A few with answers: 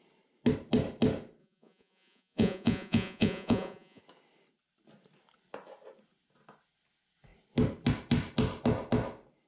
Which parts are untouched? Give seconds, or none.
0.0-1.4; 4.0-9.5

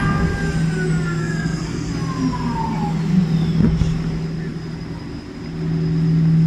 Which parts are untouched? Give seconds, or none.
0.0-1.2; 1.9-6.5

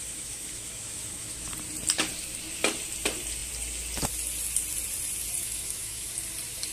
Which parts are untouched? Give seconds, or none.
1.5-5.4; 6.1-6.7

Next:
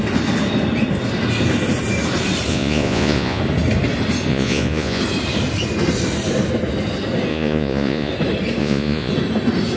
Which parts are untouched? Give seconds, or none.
0.0-2.5; 3.4-4.3; 5.0-7.3; 8.1-8.6; 9.1-9.8

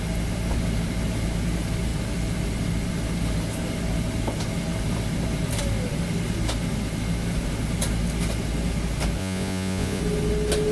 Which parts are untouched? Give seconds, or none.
0.0-9.2; 10.0-10.7

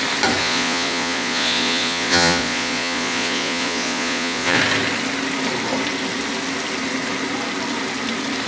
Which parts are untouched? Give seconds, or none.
0.0-0.4; 4.6-8.5

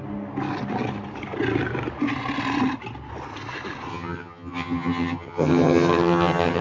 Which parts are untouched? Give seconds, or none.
0.0-3.9